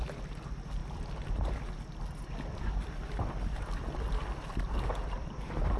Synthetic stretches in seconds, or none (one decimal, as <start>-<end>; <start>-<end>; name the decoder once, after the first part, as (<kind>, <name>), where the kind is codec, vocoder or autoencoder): none